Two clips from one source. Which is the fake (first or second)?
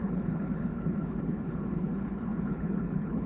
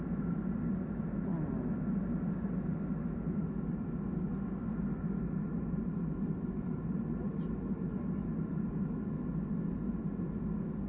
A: first